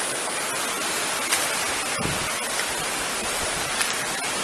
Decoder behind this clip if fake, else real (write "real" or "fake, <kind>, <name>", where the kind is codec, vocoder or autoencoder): real